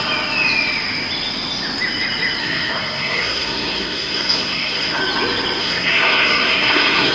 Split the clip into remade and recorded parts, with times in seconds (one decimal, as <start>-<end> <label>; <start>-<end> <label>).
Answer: 0.0-2.4 recorded; 2.4-5.0 remade; 5.0-5.6 recorded; 5.6-7.1 remade